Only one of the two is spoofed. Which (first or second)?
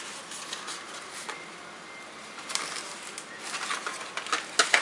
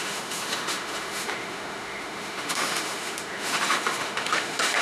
second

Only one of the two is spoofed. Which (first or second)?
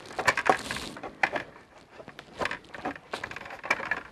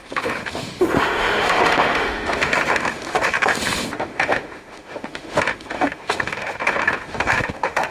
second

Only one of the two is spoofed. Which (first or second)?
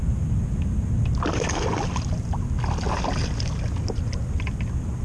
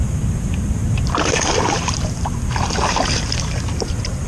second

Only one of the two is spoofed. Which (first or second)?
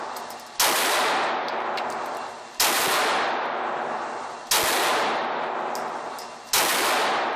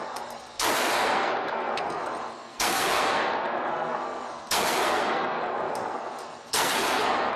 second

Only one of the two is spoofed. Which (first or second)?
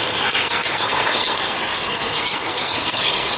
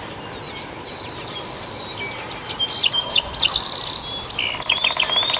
first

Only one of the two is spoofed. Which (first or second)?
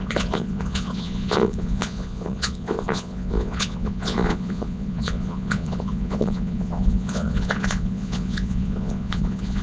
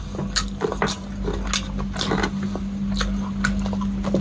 first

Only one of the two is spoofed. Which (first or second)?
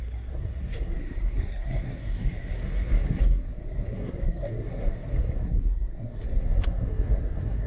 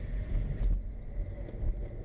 first